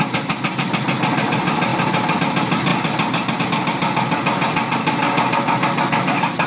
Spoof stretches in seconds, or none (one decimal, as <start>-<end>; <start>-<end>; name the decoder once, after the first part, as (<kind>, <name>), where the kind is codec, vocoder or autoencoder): 1.7-2.2 (vocoder, BigVGAN v2)